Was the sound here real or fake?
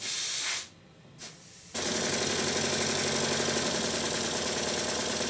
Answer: real